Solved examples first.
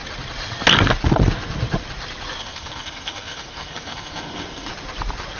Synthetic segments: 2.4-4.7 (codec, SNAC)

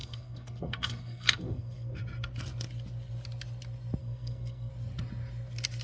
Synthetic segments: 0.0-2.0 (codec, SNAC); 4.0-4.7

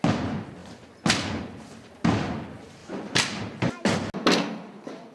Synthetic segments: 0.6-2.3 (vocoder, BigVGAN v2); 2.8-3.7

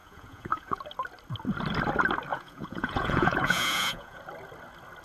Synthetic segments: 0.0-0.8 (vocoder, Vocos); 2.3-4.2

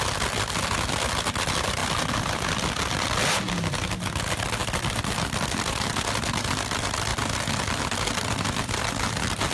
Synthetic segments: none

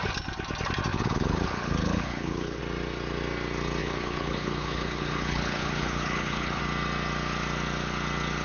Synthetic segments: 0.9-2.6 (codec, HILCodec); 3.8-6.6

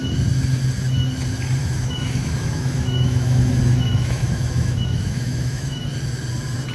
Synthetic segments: 1.6-3.5 (autoencoder, DAC-VAE); 3.9-5.8